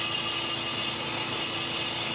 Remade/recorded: recorded